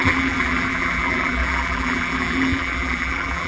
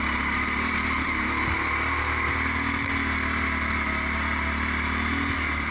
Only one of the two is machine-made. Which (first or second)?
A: first